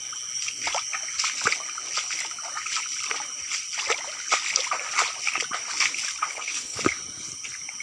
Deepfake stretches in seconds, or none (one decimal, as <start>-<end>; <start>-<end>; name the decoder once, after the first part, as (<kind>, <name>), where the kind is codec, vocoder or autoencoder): 6.3-6.8 (codec, HILCodec)